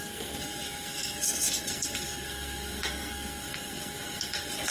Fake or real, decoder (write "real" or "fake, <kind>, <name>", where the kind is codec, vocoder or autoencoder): fake, codec, SNAC